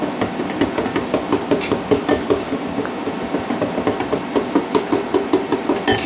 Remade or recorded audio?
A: recorded